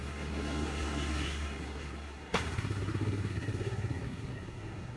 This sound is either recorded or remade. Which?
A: remade